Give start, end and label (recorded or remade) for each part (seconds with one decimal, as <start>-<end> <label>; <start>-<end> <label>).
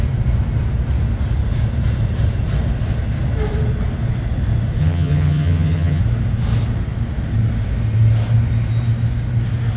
0.0-4.8 recorded; 4.8-6.0 remade; 6.0-9.8 recorded